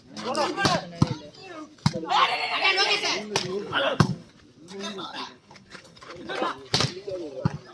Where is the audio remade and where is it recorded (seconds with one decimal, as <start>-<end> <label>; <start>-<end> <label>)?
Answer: 0.0-3.5 recorded; 3.5-4.3 remade; 4.3-4.9 recorded; 4.9-6.3 remade; 6.3-7.7 recorded